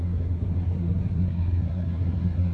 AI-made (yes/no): yes